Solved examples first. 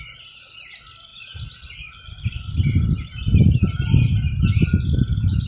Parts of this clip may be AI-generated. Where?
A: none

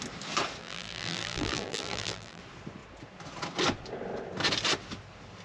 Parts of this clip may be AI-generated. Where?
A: 0.6-2.4 (vocoder, BigVGAN v2)